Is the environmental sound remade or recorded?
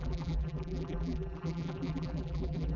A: remade